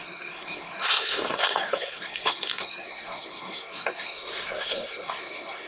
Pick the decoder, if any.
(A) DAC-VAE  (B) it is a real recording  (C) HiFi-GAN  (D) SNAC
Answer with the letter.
D